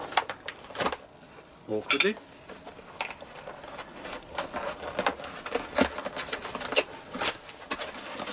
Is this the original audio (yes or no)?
yes